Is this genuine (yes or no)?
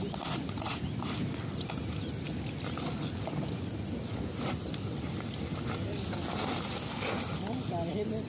yes